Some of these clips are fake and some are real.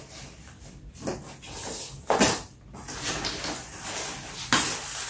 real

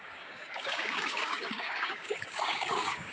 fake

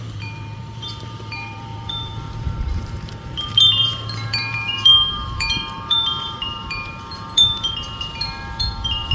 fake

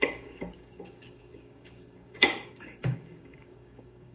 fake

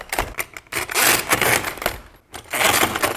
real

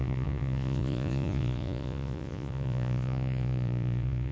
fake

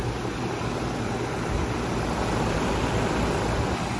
real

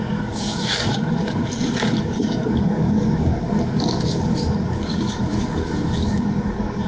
fake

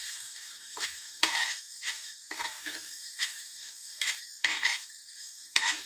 fake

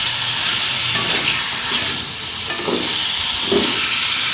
real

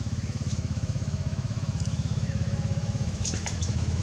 fake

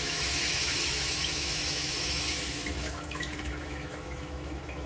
fake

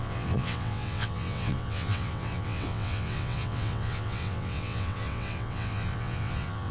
fake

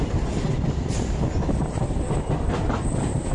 real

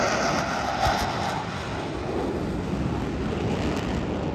real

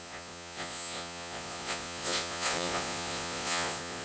fake